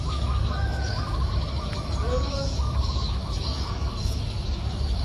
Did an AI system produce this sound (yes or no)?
yes